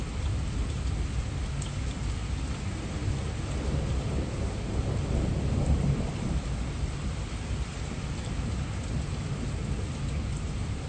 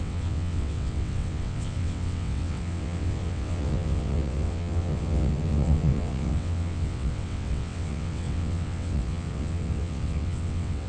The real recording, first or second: first